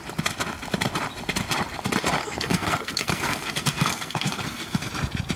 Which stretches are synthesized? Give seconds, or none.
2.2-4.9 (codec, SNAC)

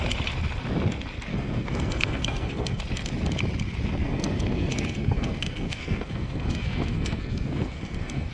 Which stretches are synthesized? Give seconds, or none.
1.3-2.8 (codec, SNAC); 4.0-8.3

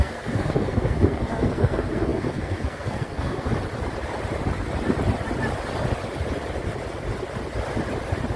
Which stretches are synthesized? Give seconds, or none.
0.0-3.5 (codec, SNAC)

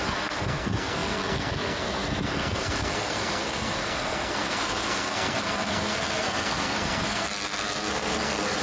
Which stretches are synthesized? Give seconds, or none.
0.0-8.6 (codec, SNAC)

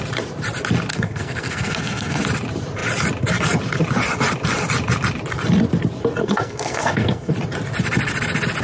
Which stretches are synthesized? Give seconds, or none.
0.9-2.2 (codec, SNAC); 6.2-7.3

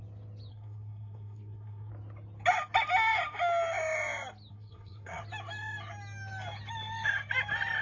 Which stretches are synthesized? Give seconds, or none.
0.5-1.9 (codec, SNAC); 4.5-5.2

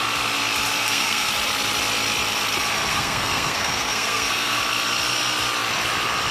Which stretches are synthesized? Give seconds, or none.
0.8-1.3 (codec, SNAC); 2.9-4.6